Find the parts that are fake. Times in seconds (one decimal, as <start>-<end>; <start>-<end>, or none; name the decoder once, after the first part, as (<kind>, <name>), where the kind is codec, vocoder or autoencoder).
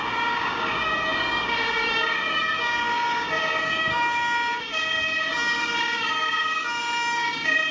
0.0-7.7 (codec, DAC)